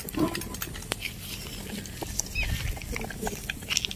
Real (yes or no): yes